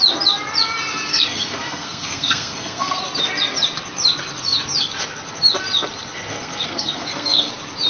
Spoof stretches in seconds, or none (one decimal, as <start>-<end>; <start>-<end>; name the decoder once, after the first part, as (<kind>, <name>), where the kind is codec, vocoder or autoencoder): 1.1-3.0 (codec, SNAC); 6.3-7.5